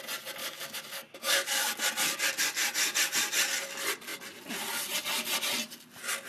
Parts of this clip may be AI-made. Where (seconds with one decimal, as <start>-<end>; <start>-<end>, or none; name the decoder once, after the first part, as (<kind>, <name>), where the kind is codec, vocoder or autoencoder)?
0.4-1.8 (codec, DAC)